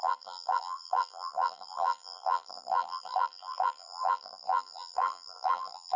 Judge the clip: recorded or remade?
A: remade